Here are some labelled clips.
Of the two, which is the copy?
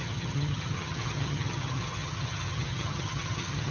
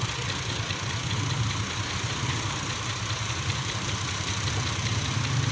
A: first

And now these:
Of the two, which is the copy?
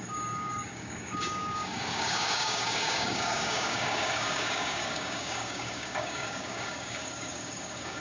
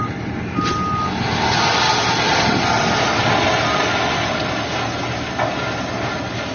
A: first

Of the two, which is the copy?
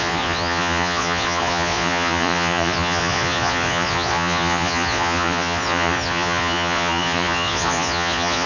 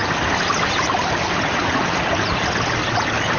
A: first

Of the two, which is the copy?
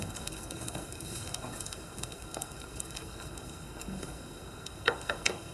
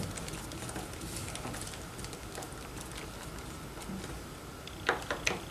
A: first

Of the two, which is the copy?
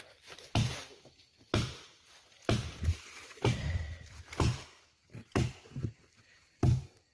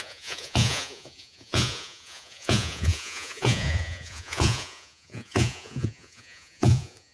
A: second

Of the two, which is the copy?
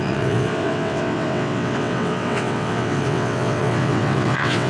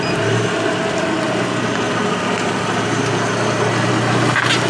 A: first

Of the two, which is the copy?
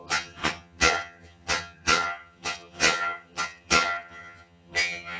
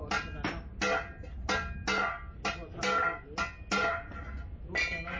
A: first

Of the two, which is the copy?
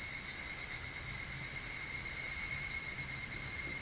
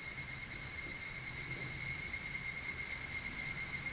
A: second